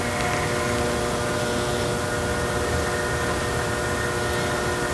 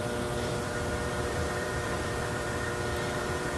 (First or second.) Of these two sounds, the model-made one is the second